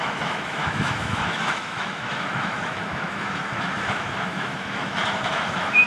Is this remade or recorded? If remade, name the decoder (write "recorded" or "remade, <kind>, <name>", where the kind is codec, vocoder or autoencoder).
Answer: remade, autoencoder, DAC-VAE